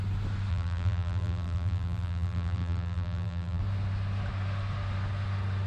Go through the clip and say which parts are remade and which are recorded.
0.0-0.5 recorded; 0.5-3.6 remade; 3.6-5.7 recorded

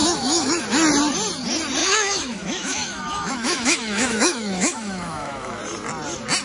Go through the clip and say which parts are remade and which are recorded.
0.0-0.6 remade; 0.6-1.8 recorded; 1.8-5.6 remade; 5.6-6.4 recorded

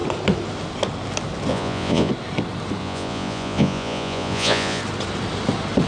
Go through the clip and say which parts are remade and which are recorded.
0.0-1.5 recorded; 1.5-2.1 remade; 2.1-2.8 recorded; 2.8-4.8 remade; 4.8-5.9 recorded